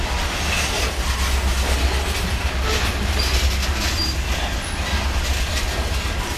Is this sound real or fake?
real